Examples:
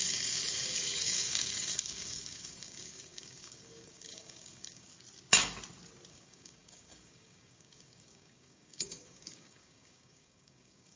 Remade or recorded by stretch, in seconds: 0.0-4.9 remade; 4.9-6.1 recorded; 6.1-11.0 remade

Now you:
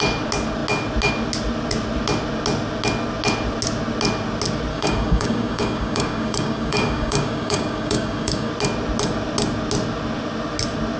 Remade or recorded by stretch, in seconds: 0.0-4.7 recorded; 4.7-8.5 remade; 8.5-11.0 recorded

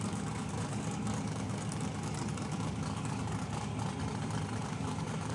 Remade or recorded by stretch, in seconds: 0.0-3.7 remade; 3.7-4.6 recorded; 4.6-5.3 remade

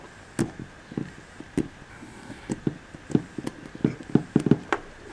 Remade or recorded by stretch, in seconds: 0.0-1.9 recorded; 1.9-2.5 remade; 2.5-5.1 recorded

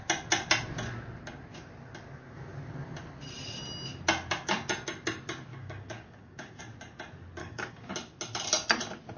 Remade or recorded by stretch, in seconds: 0.0-5.5 recorded; 5.5-6.6 remade; 6.6-7.4 recorded; 7.4-7.9 remade; 7.9-9.2 recorded

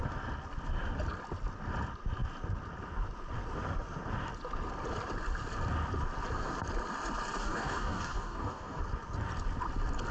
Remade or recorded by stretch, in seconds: 0.0-7.4 recorded; 7.4-8.8 remade; 8.8-10.1 recorded

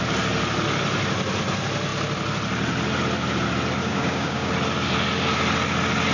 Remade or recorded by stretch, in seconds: 0.0-3.8 recorded; 3.8-4.5 remade; 4.5-6.1 recorded

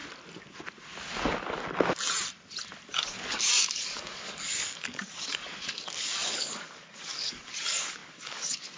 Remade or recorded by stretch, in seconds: 0.0-2.9 recorded; 2.9-8.8 remade